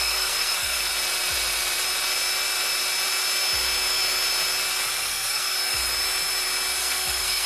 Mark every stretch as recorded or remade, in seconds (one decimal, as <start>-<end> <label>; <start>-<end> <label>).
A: 0.0-0.9 remade; 0.9-5.0 recorded; 5.0-5.8 remade; 5.8-6.8 recorded; 6.8-7.5 remade